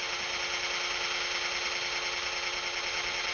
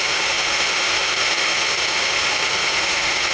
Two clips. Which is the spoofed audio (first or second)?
second